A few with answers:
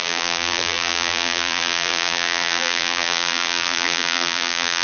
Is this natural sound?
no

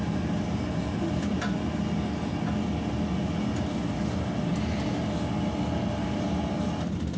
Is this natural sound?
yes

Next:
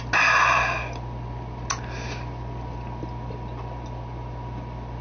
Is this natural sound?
yes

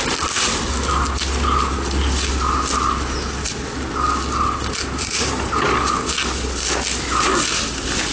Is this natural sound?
yes